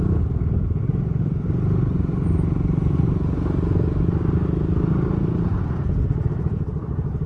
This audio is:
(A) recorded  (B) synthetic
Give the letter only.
A